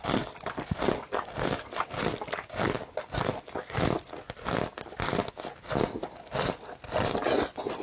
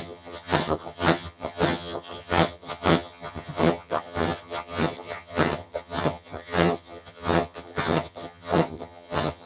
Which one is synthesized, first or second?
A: second